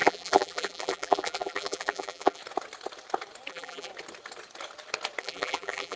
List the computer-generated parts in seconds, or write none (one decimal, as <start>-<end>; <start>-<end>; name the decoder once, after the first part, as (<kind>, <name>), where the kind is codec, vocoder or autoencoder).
0.0-2.4 (vocoder, BigVGAN v2); 3.5-3.9; 5.2-6.0